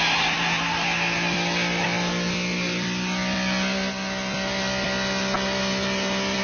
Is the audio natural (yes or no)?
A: yes